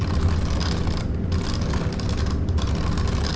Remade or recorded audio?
recorded